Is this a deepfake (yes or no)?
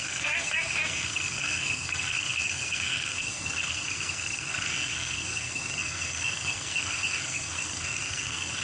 yes